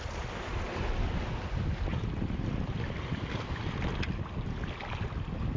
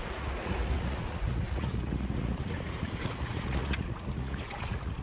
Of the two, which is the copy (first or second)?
second